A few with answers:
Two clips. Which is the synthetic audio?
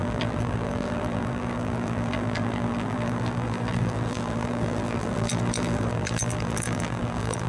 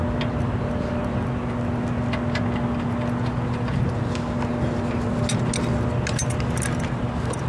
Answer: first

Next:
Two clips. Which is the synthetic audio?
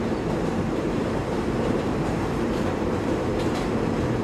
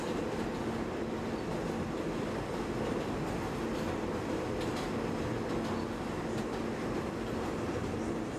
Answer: first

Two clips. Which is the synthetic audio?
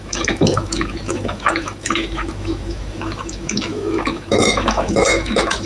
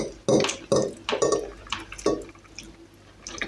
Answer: first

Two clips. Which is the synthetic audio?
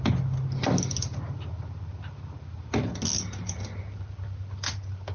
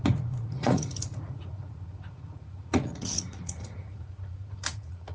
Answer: second